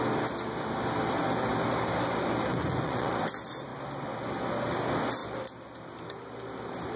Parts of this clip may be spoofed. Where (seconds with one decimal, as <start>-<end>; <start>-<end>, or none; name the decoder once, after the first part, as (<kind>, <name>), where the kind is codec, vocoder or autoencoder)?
2.5-3.1 (vocoder, Vocos)